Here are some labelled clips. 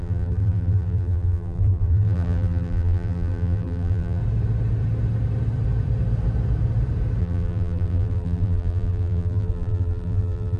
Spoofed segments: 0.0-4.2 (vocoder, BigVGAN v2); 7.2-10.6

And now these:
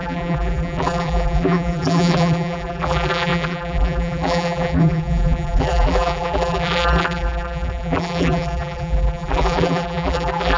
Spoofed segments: 0.0-10.6 (vocoder, BigVGAN v2)

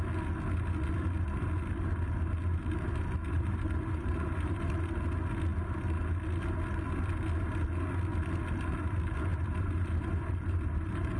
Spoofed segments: 3.2-4.8 (vocoder, BigVGAN v2); 9.3-11.2